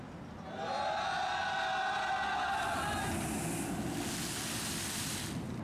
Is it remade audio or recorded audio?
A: recorded